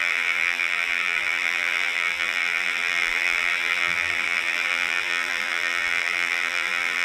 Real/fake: fake